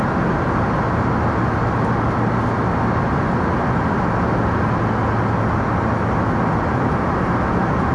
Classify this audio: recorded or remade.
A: recorded